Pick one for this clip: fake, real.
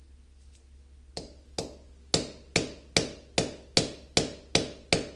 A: real